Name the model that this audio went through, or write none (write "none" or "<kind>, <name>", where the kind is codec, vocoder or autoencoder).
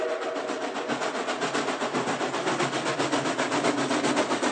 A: none